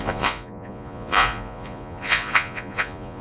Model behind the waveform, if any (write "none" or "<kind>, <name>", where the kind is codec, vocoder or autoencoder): vocoder, Vocos